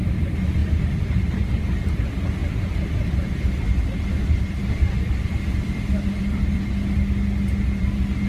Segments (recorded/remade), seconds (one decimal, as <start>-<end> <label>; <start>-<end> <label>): 0.0-0.6 recorded; 0.6-1.5 remade; 1.5-2.4 recorded; 2.4-6.6 remade; 6.6-8.3 recorded